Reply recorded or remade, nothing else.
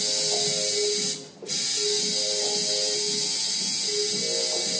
recorded